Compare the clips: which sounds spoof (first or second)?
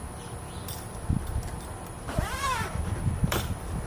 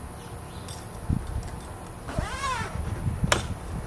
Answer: first